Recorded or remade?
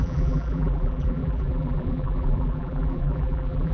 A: remade